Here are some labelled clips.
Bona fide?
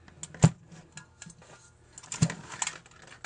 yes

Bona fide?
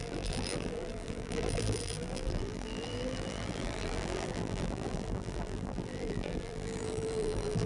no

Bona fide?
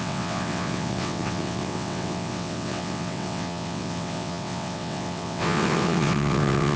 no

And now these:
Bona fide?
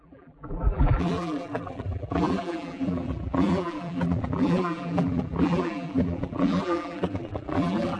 no